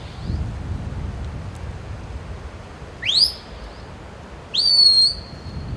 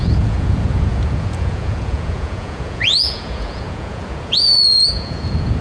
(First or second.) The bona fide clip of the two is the first